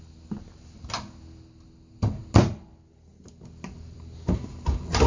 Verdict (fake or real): real